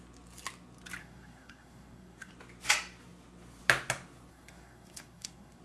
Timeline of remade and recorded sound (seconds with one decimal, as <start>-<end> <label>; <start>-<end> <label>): 0.0-1.0 recorded; 1.0-2.3 remade; 2.3-4.3 recorded; 4.3-5.6 remade